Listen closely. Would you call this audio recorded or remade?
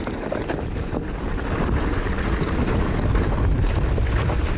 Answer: recorded